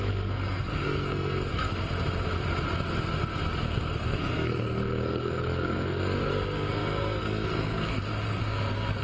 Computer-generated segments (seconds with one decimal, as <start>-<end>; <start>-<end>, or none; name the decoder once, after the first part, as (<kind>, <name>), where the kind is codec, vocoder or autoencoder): 0.0-1.9 (codec, SNAC); 3.6-9.0